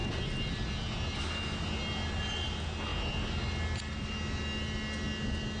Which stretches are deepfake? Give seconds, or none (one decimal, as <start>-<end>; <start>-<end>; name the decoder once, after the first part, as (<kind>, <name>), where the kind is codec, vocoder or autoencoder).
none